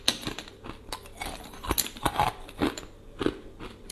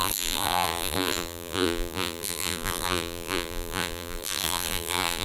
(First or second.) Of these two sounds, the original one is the first